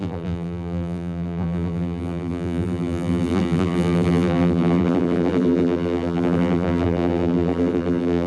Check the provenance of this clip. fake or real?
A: fake